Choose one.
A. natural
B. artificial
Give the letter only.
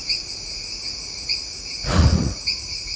B